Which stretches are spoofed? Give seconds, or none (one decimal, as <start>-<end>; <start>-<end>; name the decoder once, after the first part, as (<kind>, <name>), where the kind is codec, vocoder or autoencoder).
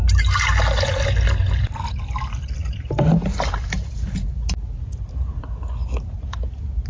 2.6-4.3 (vocoder, BigVGAN v2)